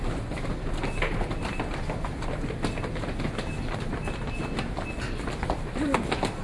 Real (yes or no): yes